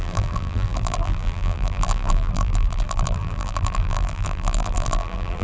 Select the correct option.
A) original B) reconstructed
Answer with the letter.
B